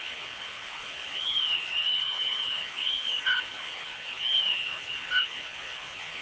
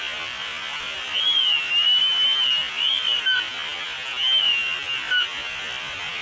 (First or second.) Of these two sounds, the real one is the second